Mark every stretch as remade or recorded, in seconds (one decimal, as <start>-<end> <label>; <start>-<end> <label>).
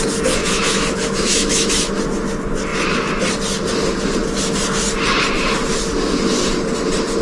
0.0-0.4 recorded; 0.4-1.9 remade; 1.9-7.2 recorded